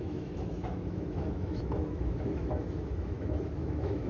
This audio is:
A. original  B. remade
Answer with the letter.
B